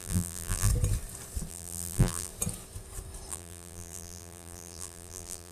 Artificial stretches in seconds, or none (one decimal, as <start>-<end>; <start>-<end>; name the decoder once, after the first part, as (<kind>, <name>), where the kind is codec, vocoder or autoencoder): 0.0-0.7 (vocoder, BigVGAN v2); 1.5-2.3; 3.3-5.5